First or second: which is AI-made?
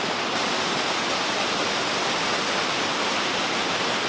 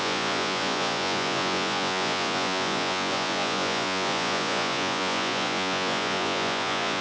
second